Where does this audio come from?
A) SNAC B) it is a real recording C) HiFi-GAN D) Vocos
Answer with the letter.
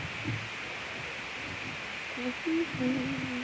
B